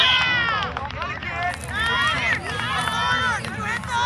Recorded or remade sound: recorded